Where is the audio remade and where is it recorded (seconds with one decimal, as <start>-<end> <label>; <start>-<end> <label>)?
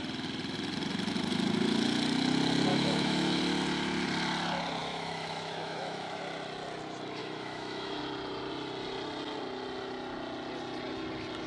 0.0-2.7 recorded; 2.7-3.4 remade; 3.4-4.8 recorded; 4.8-6.2 remade; 6.2-7.2 recorded; 7.2-8.0 remade; 8.0-11.5 recorded